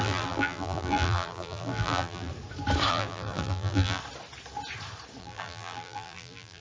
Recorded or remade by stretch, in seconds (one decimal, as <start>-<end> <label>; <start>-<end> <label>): 0.0-2.3 remade; 2.3-2.9 recorded; 2.9-4.0 remade; 4.0-5.2 recorded; 5.2-6.6 remade